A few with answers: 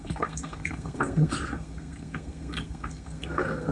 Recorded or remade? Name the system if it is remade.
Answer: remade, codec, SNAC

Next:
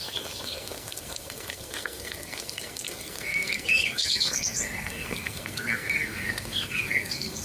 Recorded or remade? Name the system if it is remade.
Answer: remade, codec, SNAC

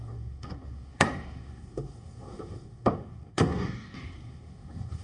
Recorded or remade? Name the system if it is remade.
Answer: remade, codec, SNAC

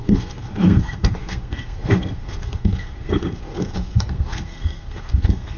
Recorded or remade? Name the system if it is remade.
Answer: remade, codec, SNAC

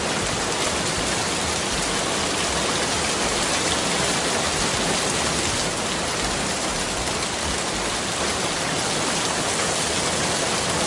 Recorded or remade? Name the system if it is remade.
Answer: recorded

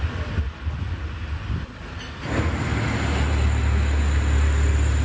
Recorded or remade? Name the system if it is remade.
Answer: recorded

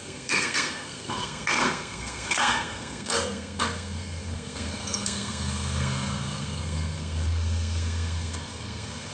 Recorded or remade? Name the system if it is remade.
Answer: remade, codec, SNAC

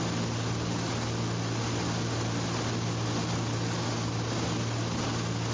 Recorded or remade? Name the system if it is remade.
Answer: recorded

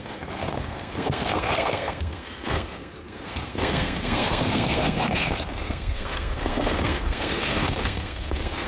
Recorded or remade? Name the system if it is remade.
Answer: remade, codec, SNAC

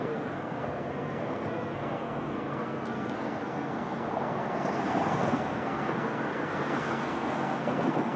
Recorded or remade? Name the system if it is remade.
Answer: remade, codec, SNAC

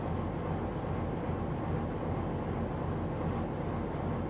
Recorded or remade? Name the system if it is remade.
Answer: recorded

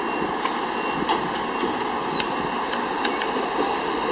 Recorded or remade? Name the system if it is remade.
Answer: recorded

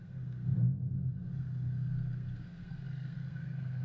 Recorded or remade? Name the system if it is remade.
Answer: remade, codec, SNAC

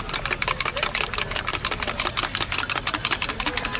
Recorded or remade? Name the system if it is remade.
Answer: recorded